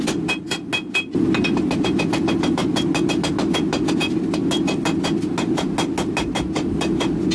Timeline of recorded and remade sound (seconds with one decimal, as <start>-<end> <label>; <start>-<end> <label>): 0.0-7.3 recorded